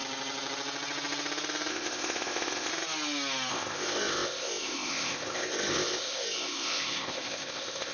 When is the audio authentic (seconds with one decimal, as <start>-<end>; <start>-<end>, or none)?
0.0-1.7; 2.7-3.5